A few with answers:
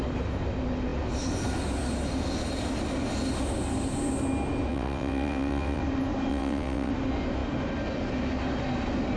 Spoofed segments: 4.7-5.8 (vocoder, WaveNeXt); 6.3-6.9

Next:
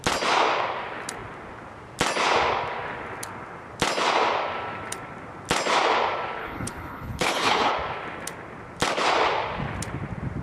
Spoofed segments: 6.4-7.7 (codec, HILCodec)